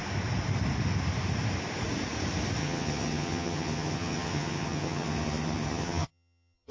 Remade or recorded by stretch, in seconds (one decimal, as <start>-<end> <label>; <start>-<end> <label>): 0.0-2.6 recorded; 2.6-6.7 remade